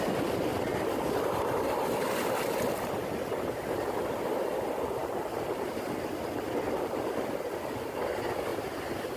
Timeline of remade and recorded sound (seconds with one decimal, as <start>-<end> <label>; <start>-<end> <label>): 0.0-9.2 recorded